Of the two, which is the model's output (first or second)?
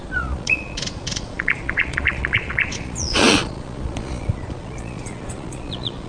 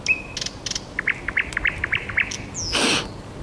first